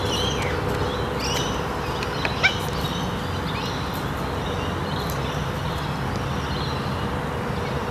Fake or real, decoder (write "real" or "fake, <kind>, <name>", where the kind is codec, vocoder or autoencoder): real